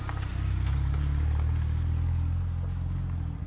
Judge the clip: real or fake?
real